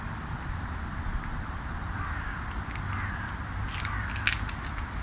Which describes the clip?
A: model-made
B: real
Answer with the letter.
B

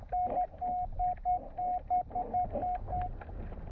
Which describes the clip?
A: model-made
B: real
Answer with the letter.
B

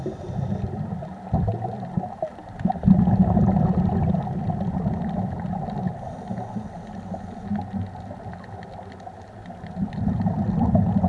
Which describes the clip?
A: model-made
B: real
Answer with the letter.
B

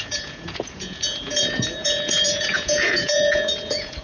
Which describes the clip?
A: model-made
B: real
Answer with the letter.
A